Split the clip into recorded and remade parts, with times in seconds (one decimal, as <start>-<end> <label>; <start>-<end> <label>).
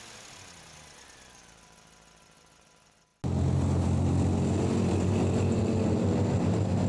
0.0-6.9 recorded